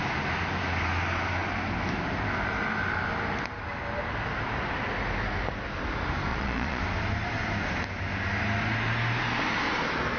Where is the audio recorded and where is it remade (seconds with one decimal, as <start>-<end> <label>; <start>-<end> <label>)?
0.0-6.3 recorded; 6.3-6.8 remade; 6.8-10.2 recorded